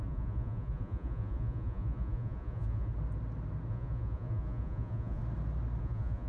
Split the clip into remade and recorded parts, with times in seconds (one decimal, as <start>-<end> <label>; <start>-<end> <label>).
0.0-2.9 remade; 2.9-3.7 recorded; 3.7-5.2 remade; 5.2-5.8 recorded; 5.8-6.3 remade